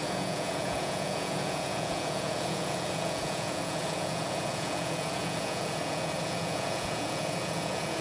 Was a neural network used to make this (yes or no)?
yes